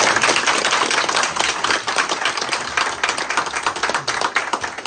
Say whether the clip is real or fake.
real